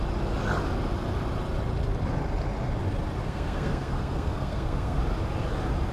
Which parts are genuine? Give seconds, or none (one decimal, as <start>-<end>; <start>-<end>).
0.0-3.2; 5.0-5.9